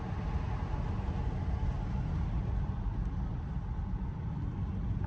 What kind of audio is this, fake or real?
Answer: real